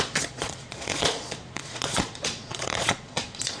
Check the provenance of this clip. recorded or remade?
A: remade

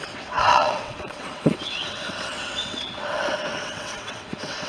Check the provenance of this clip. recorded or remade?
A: remade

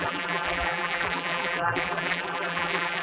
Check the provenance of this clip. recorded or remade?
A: remade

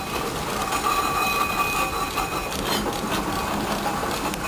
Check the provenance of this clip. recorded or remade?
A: recorded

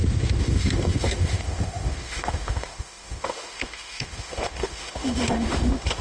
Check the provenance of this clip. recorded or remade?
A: remade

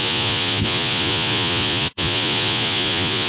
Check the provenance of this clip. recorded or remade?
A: remade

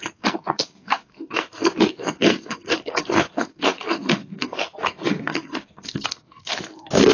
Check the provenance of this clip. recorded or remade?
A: remade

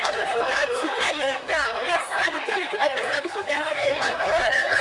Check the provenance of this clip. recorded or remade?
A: remade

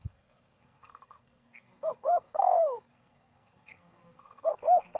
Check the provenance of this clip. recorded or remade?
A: remade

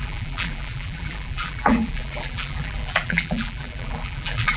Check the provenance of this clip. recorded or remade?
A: remade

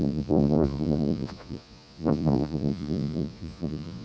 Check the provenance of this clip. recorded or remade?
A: remade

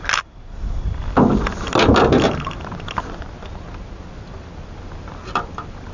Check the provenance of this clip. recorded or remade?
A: recorded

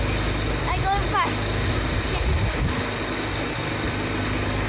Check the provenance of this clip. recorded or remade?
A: recorded